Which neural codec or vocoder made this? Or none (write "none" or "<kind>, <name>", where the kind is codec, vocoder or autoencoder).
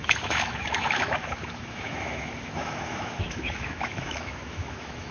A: autoencoder, DAC-VAE